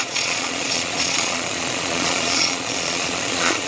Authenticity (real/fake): fake